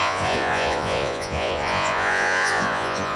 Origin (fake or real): fake